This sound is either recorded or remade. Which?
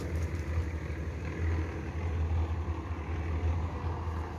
recorded